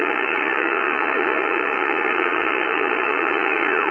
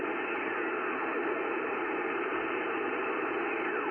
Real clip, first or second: second